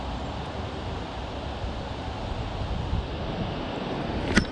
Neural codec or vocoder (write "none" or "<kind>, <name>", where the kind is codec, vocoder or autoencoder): none